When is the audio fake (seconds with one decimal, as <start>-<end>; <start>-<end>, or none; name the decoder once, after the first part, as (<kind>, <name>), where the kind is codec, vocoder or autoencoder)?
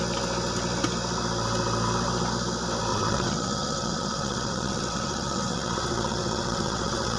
2.9-7.2 (vocoder, WaveNeXt)